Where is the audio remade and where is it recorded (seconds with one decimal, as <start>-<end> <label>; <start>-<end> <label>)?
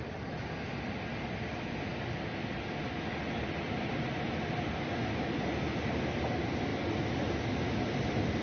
0.0-8.4 recorded